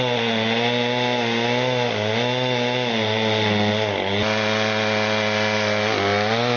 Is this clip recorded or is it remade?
recorded